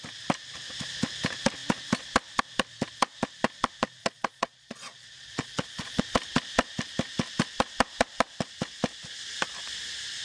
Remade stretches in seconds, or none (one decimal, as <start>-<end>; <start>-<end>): 4.0-6.0